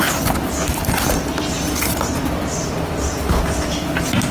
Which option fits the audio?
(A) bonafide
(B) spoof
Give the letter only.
A